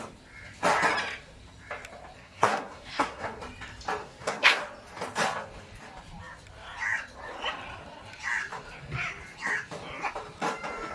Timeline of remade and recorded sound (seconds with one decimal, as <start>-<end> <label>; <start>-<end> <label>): 0.0-2.2 recorded; 2.2-3.4 remade; 3.4-4.0 recorded; 4.0-4.6 remade; 4.6-10.9 recorded